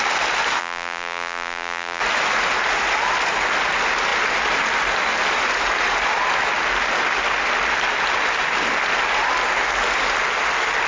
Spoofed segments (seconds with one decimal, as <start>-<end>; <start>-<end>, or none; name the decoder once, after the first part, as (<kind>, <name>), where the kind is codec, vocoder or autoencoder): 0.6-2.0 (vocoder, BigVGAN v2)